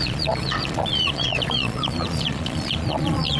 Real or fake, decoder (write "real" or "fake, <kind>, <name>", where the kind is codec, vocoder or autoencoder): fake, vocoder, Vocos